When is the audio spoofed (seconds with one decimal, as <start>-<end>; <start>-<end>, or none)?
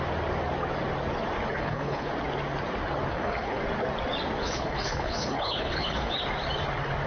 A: 1.6-2.1; 3.1-3.6; 4.4-6.2